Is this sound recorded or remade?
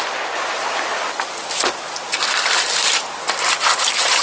recorded